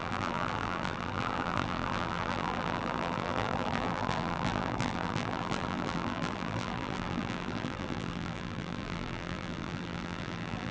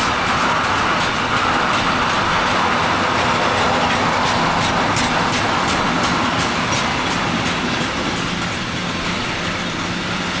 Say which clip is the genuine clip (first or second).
second